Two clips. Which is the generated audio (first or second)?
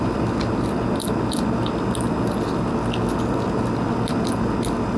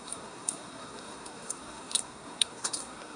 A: second